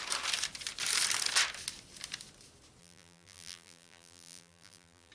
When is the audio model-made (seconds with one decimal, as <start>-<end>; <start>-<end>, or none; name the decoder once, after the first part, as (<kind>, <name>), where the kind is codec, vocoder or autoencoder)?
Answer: 2.8-5.1 (vocoder, BigVGAN v2)